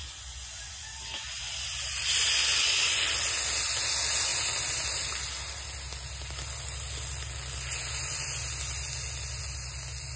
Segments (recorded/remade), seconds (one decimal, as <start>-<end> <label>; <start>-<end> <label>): 0.0-1.0 remade; 1.0-2.6 recorded; 2.6-3.1 remade; 3.1-10.2 recorded